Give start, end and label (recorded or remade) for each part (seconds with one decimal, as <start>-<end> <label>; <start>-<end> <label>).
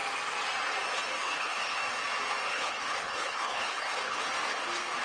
0.0-1.2 recorded; 1.2-1.8 remade; 1.8-2.5 recorded; 2.5-4.3 remade; 4.3-5.0 recorded